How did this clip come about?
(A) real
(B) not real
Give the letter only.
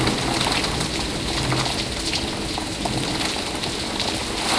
A